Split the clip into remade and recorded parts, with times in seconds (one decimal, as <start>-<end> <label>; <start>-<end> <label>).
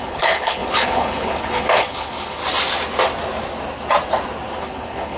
0.0-2.4 remade; 2.4-4.6 recorded; 4.6-5.2 remade